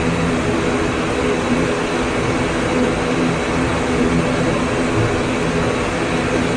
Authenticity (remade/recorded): recorded